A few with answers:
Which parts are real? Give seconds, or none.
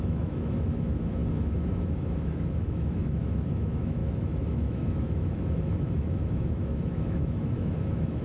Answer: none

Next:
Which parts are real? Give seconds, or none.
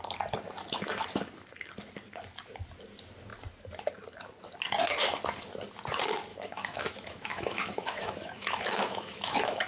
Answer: 0.0-6.3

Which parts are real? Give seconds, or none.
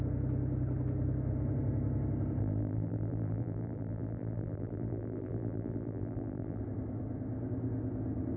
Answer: 0.0-2.4; 6.6-8.4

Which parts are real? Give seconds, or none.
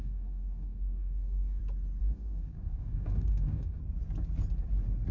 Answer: 1.6-2.0; 3.8-5.1